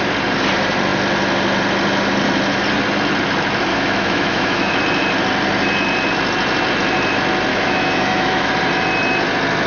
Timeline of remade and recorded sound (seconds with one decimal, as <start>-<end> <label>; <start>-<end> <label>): 0.0-3.7 recorded; 3.7-4.8 remade; 4.8-7.5 recorded; 7.5-8.5 remade; 8.5-9.7 recorded